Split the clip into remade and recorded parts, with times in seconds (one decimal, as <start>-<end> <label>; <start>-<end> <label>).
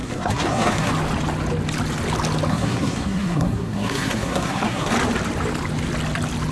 0.0-0.9 remade; 0.9-2.5 recorded; 2.5-4.9 remade; 4.9-6.5 recorded